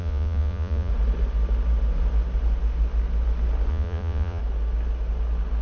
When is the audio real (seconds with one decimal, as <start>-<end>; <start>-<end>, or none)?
0.9-3.7; 4.4-5.6